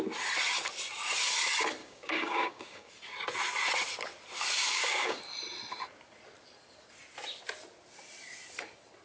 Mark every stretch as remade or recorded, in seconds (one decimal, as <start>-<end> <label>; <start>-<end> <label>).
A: 0.0-1.8 recorded; 1.8-2.9 remade; 2.9-4.7 recorded; 4.7-5.2 remade; 5.2-9.0 recorded